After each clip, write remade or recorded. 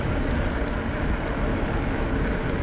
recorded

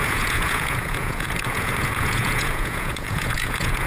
remade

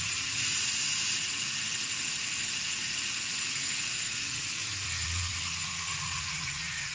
remade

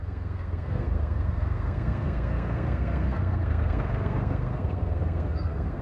remade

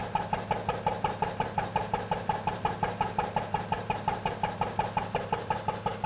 recorded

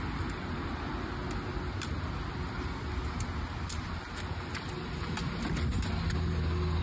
recorded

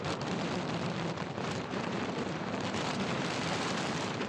remade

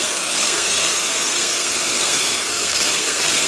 remade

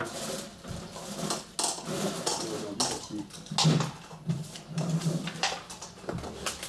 recorded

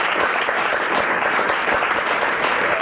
remade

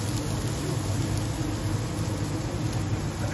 recorded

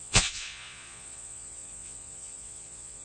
remade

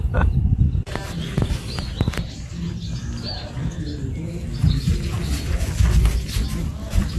recorded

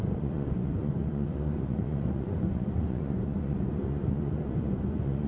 remade